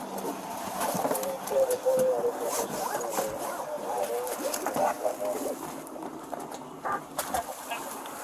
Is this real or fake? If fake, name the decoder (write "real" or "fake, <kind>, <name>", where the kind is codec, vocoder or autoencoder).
real